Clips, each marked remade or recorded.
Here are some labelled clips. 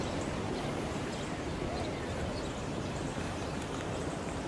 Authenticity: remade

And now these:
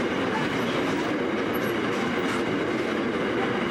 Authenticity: recorded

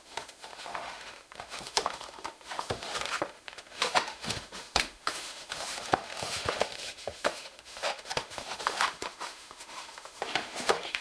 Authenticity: remade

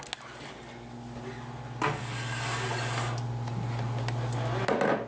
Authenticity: recorded